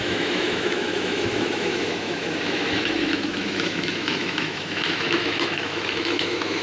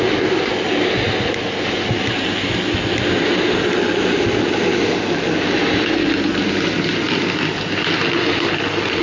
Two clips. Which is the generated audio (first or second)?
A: first